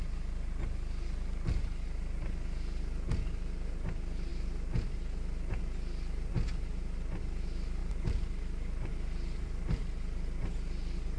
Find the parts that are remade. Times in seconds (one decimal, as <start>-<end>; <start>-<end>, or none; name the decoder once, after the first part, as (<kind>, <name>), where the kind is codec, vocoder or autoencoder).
7.8-10.4 (vocoder, BigVGAN v2)